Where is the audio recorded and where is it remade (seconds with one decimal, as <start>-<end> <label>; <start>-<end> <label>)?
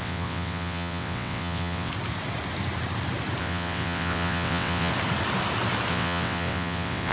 0.0-1.9 remade; 1.9-3.4 recorded; 3.4-4.9 remade; 4.9-5.9 recorded; 5.9-7.1 remade